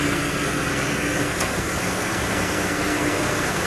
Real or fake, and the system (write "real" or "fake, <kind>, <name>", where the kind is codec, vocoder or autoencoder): fake, codec, SNAC